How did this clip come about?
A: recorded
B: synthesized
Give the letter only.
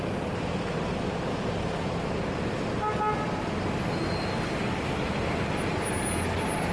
A